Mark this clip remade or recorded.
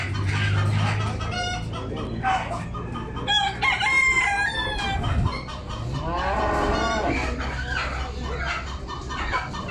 recorded